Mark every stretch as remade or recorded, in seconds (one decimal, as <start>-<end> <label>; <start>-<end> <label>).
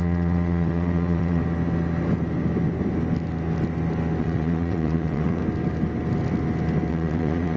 0.0-1.4 remade; 1.4-4.2 recorded; 4.2-5.4 remade; 5.4-6.9 recorded; 6.9-7.6 remade